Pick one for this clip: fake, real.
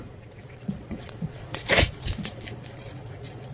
fake